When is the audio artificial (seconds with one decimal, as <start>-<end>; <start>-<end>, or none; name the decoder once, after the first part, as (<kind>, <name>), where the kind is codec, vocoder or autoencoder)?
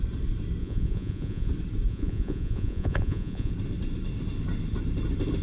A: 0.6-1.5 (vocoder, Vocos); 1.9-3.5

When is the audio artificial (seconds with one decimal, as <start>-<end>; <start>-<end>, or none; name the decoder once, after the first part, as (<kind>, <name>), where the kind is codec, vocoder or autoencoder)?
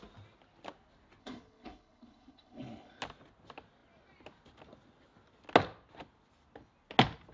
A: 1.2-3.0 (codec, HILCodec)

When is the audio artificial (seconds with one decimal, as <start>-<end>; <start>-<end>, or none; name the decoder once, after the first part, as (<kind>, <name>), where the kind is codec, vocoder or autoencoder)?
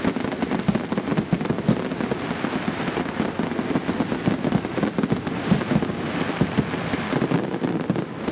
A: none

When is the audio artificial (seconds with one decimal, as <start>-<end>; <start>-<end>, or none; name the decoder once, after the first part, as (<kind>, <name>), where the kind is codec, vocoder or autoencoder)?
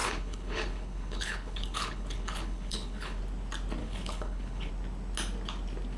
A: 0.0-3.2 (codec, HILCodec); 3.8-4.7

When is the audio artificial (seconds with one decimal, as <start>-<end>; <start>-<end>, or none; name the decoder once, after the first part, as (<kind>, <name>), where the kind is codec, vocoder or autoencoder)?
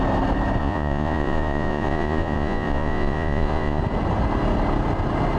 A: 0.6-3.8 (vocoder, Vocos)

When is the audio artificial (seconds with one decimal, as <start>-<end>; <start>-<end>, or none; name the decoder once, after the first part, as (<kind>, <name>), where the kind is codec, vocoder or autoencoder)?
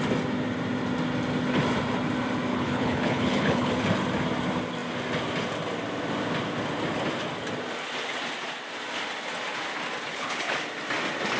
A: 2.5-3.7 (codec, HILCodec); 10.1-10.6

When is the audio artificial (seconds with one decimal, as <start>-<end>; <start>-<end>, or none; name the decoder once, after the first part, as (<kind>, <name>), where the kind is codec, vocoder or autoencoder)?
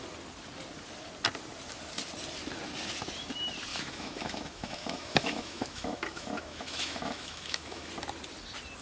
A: 3.7-7.9 (autoencoder, DAC-VAE)